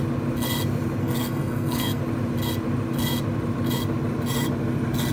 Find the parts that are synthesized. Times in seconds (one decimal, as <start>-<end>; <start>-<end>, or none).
1.0-2.0